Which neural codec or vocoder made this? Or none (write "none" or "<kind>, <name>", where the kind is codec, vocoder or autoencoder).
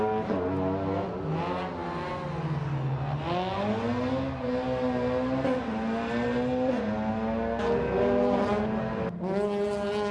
none